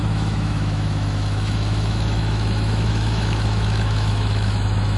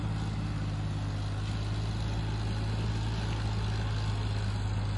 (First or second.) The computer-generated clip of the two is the first